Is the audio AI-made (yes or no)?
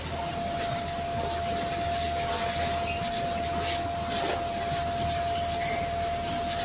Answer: no